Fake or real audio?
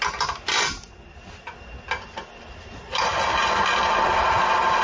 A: real